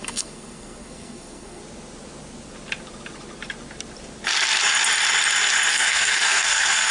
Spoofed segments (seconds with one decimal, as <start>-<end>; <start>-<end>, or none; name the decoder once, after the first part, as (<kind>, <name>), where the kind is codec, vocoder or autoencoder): 0.0-1.6 (codec, SNAC); 5.7-6.9